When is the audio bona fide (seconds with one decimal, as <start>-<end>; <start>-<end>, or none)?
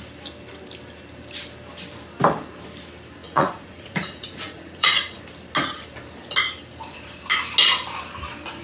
0.0-3.2; 5.2-8.6